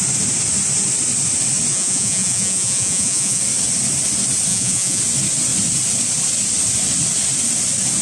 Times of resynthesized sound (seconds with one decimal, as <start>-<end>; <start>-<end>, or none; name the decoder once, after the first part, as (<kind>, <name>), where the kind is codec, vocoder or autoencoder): 1.7-3.4 (vocoder, Vocos); 4.5-5.0